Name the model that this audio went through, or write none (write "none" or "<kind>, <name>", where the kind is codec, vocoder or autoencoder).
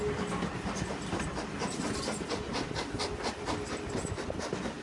none